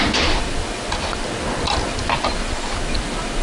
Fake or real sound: real